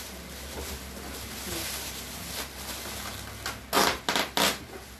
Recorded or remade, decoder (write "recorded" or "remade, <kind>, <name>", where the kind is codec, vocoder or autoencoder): recorded